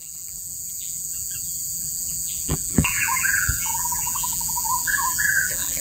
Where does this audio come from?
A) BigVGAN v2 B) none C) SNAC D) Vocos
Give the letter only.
A